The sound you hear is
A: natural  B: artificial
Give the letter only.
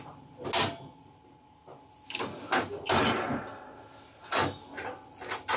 A